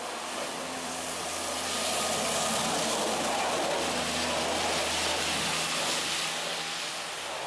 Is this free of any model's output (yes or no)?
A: yes